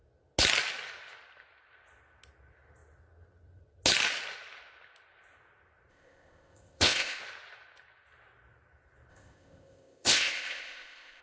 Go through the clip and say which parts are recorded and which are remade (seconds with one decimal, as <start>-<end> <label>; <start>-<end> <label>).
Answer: 0.0-5.9 recorded; 5.9-7.2 remade; 7.2-9.1 recorded; 9.1-11.2 remade